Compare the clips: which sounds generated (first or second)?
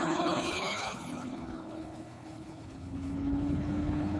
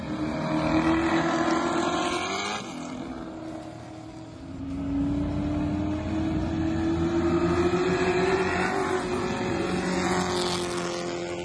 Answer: first